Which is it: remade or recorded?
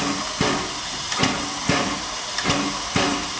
recorded